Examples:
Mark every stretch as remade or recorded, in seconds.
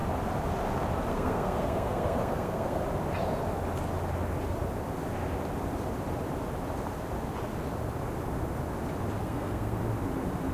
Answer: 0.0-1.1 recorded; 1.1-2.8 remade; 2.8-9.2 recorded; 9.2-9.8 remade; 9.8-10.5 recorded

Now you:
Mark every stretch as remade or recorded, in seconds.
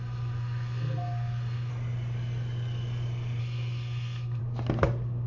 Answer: 0.0-1.7 remade; 1.7-3.4 recorded; 3.4-4.4 remade; 4.4-5.3 recorded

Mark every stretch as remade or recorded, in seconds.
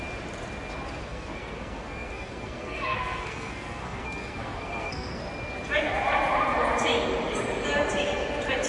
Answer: 0.0-1.1 recorded; 1.1-5.2 remade; 5.2-8.7 recorded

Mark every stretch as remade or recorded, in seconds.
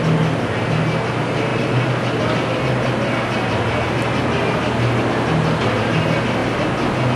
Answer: 0.0-7.2 recorded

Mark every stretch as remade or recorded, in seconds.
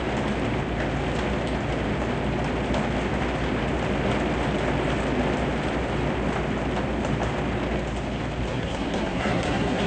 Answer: 0.0-8.5 recorded; 8.5-9.9 remade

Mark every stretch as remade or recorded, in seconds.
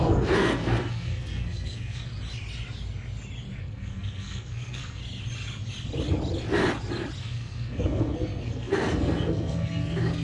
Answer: 0.0-2.1 remade; 2.1-3.6 recorded; 3.6-5.0 remade; 5.0-7.2 recorded; 7.2-10.2 remade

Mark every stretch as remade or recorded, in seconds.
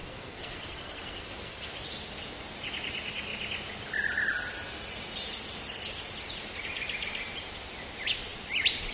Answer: 0.0-1.7 remade; 1.7-8.9 recorded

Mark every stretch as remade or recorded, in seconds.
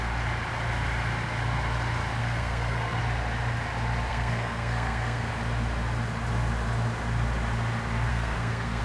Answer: 0.0-2.2 recorded; 2.2-3.0 remade; 3.0-4.1 recorded; 4.1-5.3 remade; 5.3-8.1 recorded; 8.1-8.8 remade